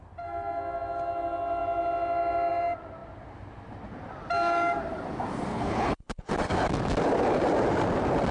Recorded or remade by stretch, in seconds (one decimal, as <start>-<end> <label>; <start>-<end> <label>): 0.0-5.5 recorded; 5.5-6.3 remade; 6.3-8.3 recorded